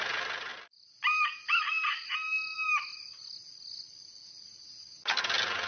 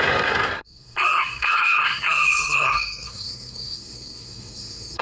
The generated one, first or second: second